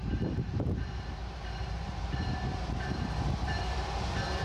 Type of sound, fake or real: fake